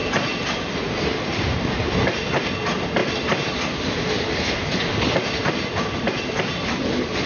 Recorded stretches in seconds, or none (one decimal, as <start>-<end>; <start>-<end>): 0.0-7.3